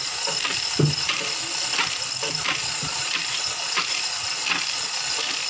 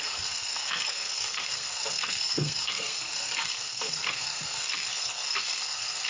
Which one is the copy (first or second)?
second